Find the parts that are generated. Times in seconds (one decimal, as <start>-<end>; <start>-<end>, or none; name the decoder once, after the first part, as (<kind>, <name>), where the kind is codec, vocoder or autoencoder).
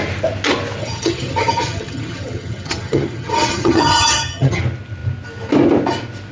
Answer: 0.8-4.6 (vocoder, HiFi-GAN)